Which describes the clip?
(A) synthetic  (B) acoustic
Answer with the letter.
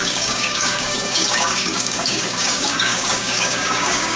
A